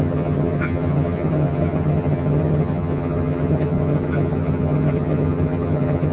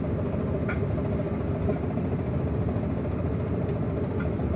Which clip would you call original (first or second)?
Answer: second